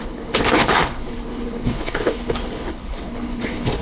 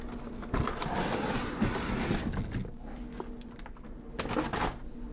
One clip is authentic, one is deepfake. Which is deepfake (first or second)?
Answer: first